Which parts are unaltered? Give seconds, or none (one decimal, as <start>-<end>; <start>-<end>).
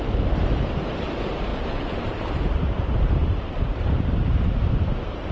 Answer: none